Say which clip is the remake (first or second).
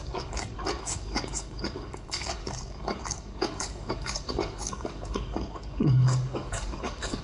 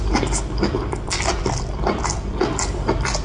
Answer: first